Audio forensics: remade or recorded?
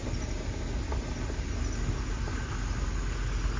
recorded